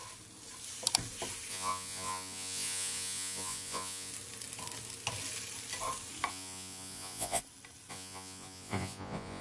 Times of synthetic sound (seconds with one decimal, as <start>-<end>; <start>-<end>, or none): 1.5-4.1; 6.3-7.4; 7.9-9.4